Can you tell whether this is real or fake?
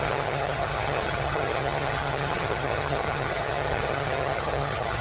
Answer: fake